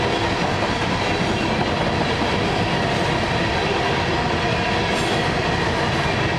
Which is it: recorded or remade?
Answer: recorded